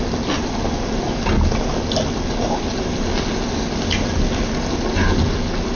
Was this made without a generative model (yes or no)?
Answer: yes